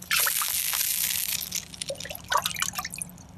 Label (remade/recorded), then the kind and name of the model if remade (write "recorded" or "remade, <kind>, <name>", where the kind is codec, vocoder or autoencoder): recorded